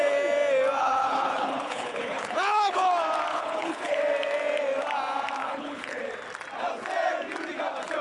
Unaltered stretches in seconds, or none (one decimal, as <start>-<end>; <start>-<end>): 0.0-0.8; 2.9-3.3; 4.0-5.4; 6.0-8.0